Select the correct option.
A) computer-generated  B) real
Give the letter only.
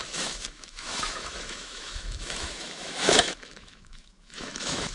A